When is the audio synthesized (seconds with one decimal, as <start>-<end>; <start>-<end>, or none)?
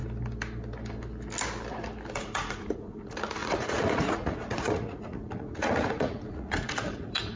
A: 2.1-7.4